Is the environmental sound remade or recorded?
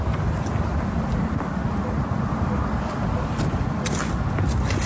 recorded